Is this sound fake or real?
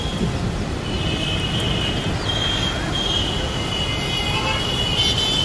real